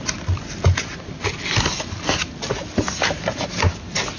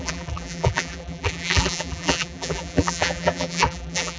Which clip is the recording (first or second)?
first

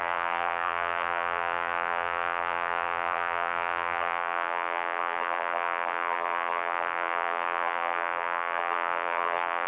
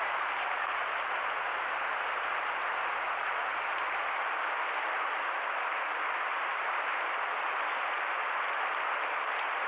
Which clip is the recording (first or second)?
second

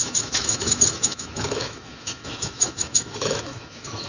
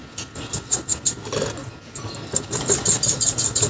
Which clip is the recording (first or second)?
second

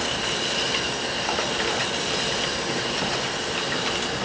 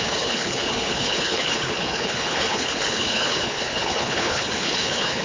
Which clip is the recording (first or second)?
first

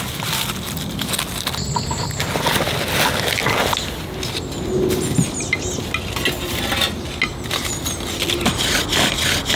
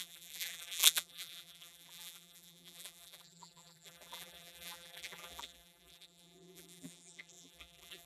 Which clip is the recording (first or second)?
first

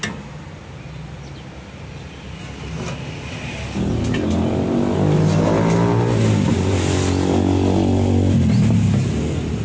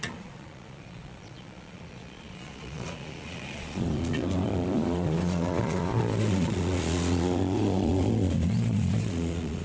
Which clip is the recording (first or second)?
first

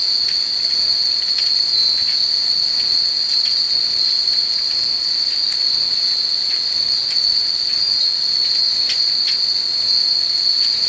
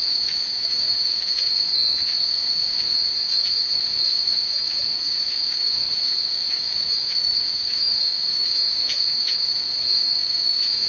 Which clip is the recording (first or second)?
first